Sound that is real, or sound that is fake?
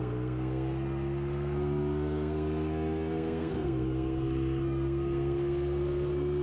fake